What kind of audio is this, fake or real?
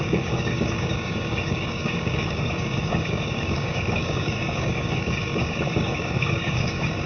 fake